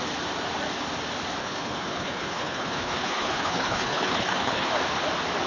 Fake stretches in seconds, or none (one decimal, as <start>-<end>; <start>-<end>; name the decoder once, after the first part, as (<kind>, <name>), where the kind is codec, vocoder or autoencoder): 1.4-4.7 (codec, HILCodec)